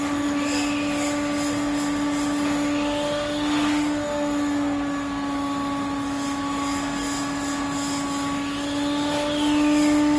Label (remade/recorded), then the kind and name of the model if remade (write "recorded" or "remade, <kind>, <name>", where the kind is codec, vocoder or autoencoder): recorded